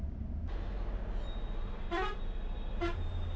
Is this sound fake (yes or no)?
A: no